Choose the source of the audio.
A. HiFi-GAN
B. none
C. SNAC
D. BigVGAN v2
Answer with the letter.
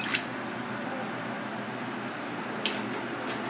B